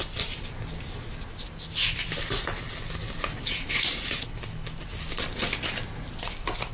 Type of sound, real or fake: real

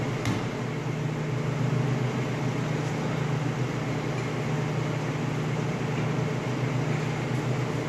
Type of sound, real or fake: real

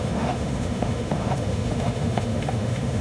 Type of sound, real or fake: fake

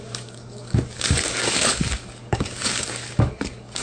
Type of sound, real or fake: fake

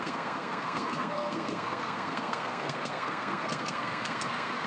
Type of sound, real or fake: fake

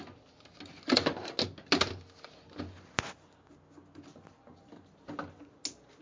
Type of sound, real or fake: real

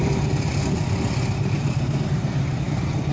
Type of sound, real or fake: fake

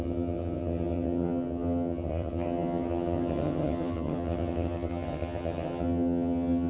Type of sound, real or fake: fake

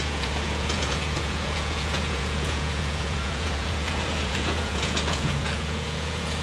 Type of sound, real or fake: fake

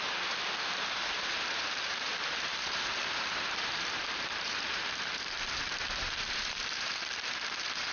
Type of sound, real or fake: fake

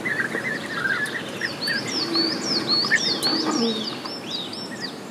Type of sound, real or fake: real